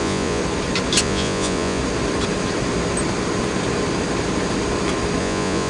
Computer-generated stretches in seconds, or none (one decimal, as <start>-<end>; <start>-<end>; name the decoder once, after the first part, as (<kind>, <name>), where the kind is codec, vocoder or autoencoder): 0.0-0.4 (vocoder, Vocos); 1.0-1.8; 5.2-5.7